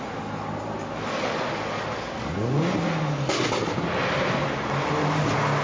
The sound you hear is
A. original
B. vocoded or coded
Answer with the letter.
A